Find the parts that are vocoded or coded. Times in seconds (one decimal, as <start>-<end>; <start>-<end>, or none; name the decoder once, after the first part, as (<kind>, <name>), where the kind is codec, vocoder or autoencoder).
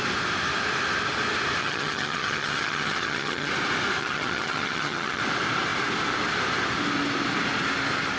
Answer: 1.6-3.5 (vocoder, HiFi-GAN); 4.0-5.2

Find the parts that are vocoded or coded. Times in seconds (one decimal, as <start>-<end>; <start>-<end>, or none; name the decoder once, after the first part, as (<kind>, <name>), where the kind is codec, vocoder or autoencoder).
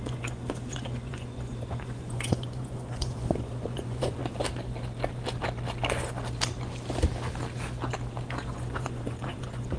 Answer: 0.0-4.2 (vocoder, Vocos); 8.3-9.8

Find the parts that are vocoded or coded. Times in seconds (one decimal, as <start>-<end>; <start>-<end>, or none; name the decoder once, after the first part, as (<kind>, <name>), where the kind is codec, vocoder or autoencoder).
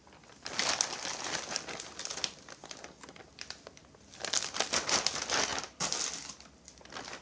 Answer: none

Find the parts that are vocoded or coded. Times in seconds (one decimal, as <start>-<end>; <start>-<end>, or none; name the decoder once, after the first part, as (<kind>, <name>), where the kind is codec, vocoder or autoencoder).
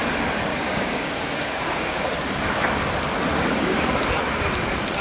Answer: 0.5-2.0 (codec, DAC); 3.3-3.9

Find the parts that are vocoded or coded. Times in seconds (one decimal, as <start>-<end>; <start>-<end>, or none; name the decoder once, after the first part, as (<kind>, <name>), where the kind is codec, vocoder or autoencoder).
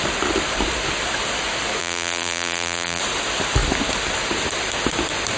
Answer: 1.8-3.0 (vocoder, BigVGAN v2)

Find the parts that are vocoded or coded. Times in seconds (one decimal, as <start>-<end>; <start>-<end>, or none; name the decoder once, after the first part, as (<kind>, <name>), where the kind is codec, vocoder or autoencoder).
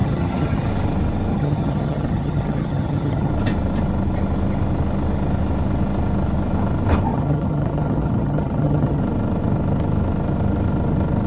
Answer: 0.0-0.7 (vocoder, HiFi-GAN); 1.3-3.3; 7.1-9.0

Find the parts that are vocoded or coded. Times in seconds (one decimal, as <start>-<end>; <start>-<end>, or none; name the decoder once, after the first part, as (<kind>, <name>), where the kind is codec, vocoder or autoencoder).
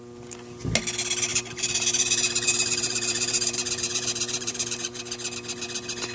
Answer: 1.3-5.0 (vocoder, BigVGAN v2)